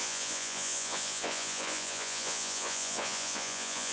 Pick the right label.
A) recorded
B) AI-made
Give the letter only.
B